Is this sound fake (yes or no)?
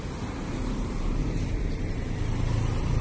yes